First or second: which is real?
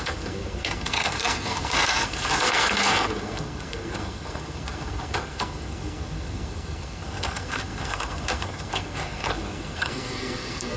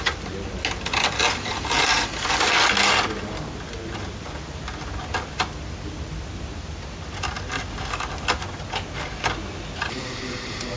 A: second